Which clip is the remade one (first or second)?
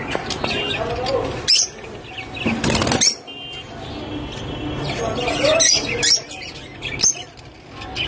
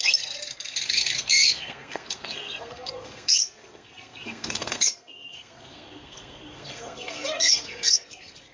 second